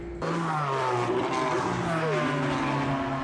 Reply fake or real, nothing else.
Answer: real